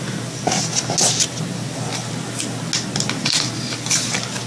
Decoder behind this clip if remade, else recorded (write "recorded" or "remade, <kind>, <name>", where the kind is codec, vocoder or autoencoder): recorded